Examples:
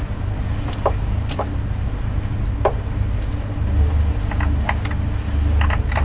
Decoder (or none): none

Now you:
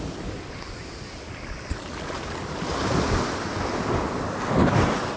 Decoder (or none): none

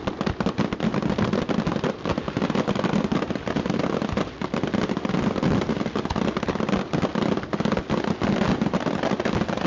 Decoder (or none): none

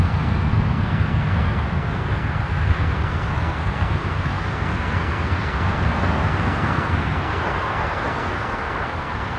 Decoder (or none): codec, SNAC